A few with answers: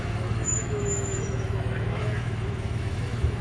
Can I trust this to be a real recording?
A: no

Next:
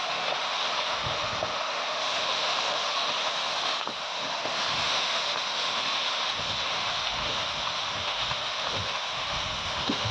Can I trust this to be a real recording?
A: no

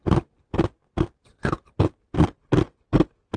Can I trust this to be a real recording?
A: yes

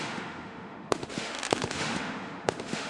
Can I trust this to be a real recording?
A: no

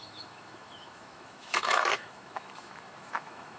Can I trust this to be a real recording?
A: no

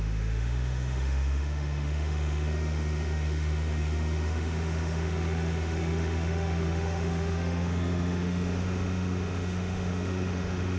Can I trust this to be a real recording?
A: no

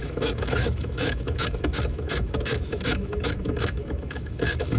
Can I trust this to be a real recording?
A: no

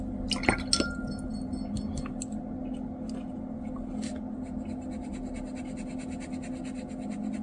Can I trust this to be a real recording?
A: yes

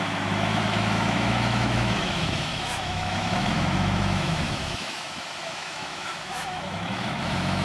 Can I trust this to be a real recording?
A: no